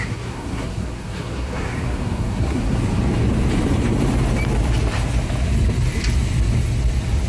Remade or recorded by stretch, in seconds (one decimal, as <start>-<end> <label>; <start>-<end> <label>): 0.0-2.8 remade; 2.8-7.3 recorded